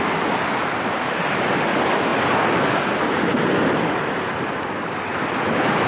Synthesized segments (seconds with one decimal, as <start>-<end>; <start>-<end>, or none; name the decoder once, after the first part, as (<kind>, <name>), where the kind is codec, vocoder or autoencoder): none